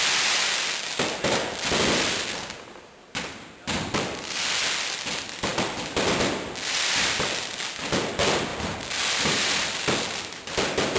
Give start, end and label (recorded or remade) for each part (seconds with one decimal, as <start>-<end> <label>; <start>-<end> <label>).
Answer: 0.0-11.0 recorded